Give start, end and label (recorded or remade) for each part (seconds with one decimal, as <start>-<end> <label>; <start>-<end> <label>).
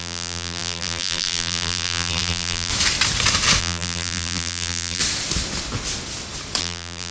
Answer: 0.0-2.7 remade; 2.7-3.6 recorded; 3.6-5.0 remade; 5.0-6.6 recorded; 6.6-7.1 remade